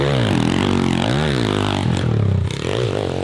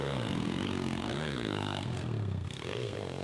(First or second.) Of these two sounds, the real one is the first